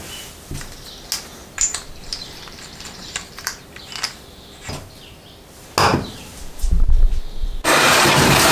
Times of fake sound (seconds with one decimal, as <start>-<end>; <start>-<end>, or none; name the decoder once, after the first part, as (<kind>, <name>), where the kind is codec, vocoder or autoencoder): 1.4-3.8 (vocoder, BigVGAN v2); 5.9-8.5